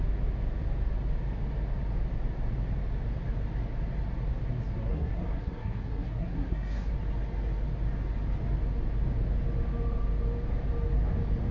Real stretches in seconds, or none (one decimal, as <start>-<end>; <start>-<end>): 0.0-4.9; 6.9-11.5